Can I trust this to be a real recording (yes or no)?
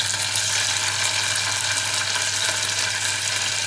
yes